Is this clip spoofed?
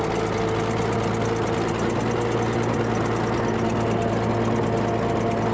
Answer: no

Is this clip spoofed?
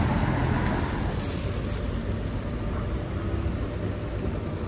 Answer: no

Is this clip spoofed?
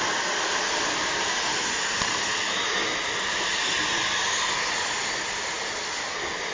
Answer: no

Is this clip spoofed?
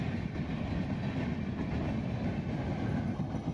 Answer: no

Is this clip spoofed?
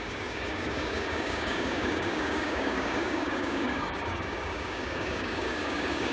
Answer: yes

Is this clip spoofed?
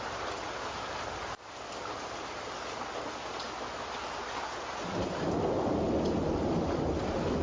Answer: no